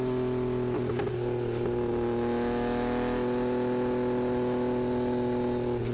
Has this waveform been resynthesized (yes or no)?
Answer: no